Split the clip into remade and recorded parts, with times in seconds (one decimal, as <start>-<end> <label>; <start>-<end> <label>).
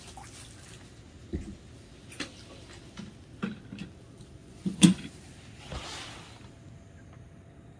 0.0-4.4 recorded; 4.4-5.0 remade; 5.0-7.8 recorded